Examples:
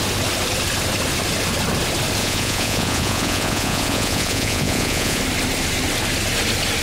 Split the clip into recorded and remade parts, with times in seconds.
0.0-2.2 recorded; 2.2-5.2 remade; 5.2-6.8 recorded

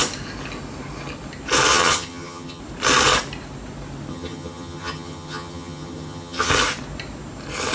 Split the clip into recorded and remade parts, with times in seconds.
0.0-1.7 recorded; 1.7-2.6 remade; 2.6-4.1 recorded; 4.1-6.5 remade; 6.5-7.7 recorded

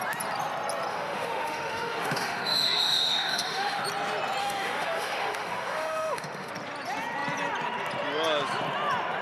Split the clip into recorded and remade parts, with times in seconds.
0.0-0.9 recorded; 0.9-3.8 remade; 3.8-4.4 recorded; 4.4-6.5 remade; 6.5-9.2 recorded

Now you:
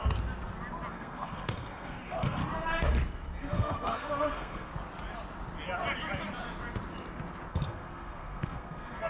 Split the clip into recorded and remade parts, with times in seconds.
0.0-0.9 recorded; 0.9-2.4 remade; 2.4-3.4 recorded; 3.4-4.7 remade; 4.7-7.5 recorded; 7.5-9.1 remade